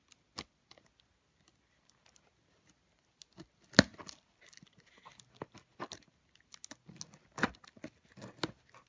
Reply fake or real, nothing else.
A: real